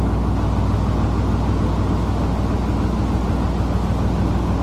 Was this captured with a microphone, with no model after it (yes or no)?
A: yes